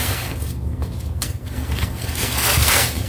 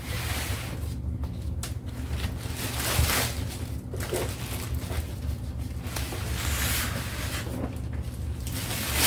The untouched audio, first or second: second